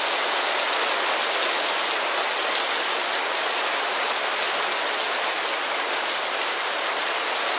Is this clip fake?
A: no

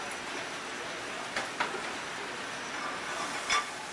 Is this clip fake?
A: yes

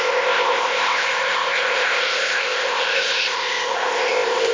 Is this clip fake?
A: yes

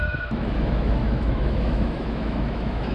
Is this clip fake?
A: yes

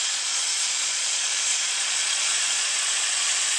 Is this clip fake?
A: yes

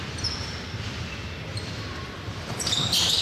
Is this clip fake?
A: yes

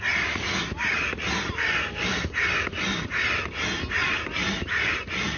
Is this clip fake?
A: no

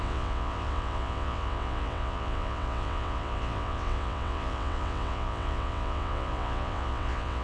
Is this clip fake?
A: yes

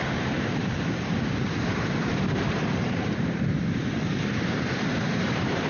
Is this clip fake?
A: yes